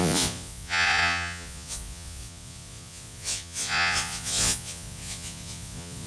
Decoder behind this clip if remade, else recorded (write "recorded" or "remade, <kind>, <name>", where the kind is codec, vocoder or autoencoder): remade, vocoder, Vocos